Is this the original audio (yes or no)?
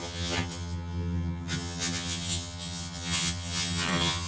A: no